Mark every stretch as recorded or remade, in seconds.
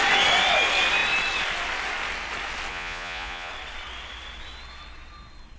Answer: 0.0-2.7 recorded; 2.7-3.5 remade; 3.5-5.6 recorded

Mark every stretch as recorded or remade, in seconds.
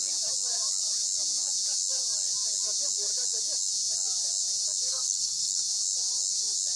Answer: 0.0-4.9 recorded; 4.9-5.6 remade; 5.6-6.8 recorded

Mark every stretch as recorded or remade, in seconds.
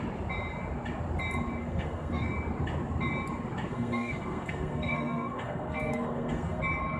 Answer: 0.0-1.6 recorded; 1.6-2.3 remade; 2.3-3.7 recorded; 3.7-6.6 remade; 6.6-7.0 recorded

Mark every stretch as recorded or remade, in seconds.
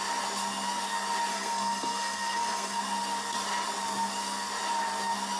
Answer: 0.0-1.3 recorded; 1.3-2.8 remade; 2.8-5.4 recorded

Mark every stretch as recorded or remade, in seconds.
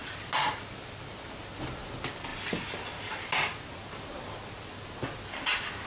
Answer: 0.0-5.9 recorded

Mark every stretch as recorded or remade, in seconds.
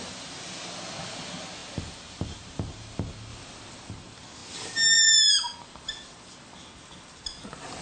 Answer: 0.0-7.8 recorded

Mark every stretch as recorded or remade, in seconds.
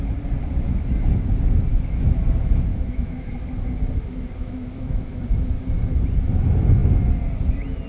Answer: 0.0-1.7 recorded; 1.7-2.2 remade; 2.2-2.7 recorded; 2.7-3.3 remade; 3.3-4.4 recorded; 4.4-5.2 remade; 5.2-7.9 recorded